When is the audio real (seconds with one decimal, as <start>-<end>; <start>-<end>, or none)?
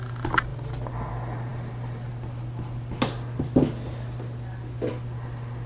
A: 0.0-5.7